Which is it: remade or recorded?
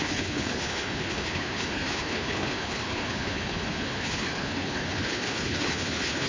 remade